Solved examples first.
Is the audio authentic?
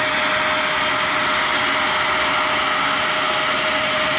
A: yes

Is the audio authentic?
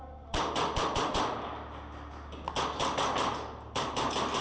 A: yes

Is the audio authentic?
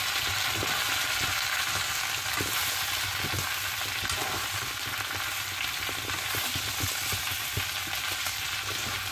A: yes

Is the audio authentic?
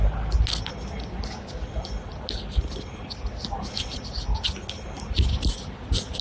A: yes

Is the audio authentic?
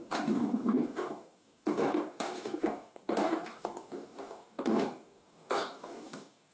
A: no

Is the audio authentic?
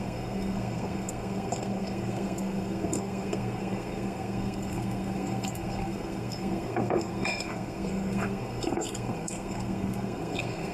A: no